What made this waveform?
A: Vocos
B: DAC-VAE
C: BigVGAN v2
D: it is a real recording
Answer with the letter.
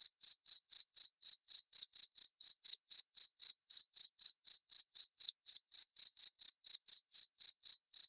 B